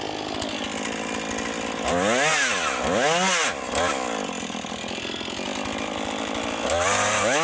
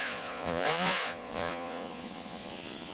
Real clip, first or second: first